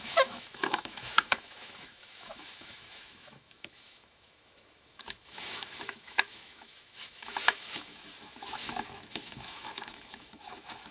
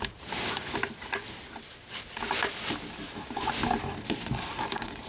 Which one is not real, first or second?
first